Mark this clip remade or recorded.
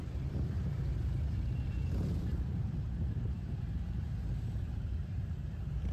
remade